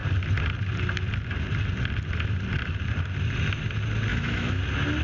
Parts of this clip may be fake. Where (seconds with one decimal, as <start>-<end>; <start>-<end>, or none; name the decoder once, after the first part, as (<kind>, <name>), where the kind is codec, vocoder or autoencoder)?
4.1-4.6 (autoencoder, DAC-VAE)